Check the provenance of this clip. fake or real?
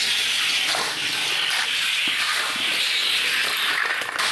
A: real